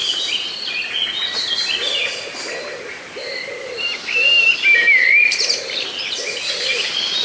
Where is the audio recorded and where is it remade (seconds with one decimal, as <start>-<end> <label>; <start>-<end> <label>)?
0.0-7.2 recorded